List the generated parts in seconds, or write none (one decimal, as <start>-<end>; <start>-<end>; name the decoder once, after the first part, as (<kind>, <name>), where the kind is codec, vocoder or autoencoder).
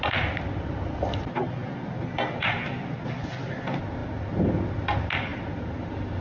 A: none